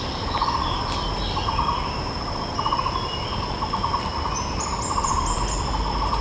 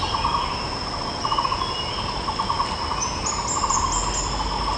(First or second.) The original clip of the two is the second